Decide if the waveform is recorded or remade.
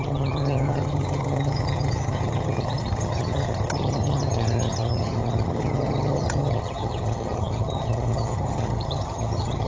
remade